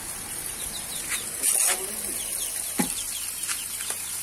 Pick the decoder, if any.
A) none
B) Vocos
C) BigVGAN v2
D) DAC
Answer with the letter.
A